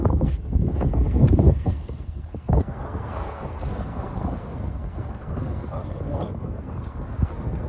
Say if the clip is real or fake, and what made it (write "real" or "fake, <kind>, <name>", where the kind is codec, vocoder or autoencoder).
fake, codec, SNAC